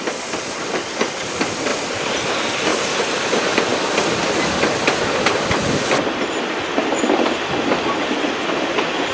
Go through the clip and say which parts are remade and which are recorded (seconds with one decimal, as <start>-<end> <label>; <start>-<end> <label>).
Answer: 0.0-9.1 recorded